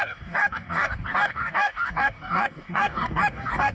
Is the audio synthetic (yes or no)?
yes